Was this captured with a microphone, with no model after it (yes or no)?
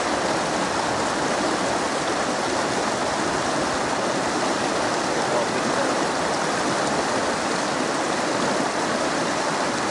yes